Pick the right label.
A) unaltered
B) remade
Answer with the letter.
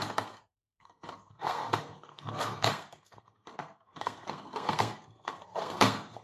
B